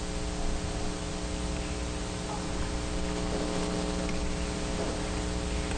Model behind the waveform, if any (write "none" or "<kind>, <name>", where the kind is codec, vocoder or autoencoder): none